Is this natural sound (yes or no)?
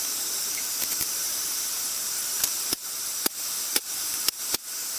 no